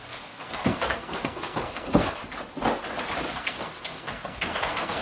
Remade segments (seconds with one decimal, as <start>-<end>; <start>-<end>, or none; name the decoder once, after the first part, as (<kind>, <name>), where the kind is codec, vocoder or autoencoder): 0.0-2.2 (codec, SNAC); 3.3-5.0